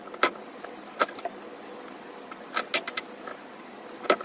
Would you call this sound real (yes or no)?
yes